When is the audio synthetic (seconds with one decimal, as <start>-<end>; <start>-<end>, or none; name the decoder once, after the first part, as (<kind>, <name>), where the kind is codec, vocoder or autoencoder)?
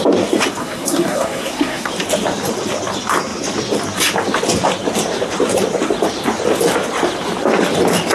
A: 0.6-1.9 (codec, SNAC)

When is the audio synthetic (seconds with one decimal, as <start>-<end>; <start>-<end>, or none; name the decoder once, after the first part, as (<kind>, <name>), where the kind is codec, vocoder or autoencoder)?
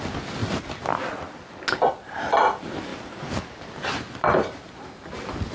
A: 0.0-0.4 (vocoder, BigVGAN v2); 1.8-2.9; 3.9-5.5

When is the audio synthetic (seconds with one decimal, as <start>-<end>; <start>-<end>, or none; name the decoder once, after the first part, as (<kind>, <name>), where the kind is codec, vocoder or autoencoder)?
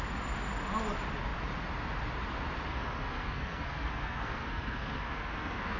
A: 2.7-5.8 (codec, SNAC)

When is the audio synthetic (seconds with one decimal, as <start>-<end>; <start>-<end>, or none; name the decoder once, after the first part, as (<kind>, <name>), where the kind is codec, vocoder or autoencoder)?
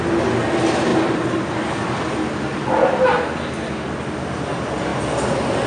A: none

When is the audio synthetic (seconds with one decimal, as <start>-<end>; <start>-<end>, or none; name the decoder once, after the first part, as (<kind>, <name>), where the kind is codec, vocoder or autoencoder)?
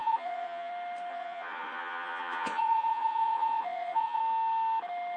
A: 0.0-0.7 (vocoder, Vocos); 1.1-4.2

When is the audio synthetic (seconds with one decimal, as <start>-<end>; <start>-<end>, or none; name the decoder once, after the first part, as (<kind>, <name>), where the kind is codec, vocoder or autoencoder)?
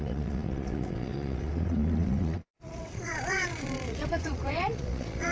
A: 0.0-5.3 (vocoder, WaveNeXt)